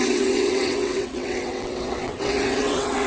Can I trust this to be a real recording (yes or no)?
no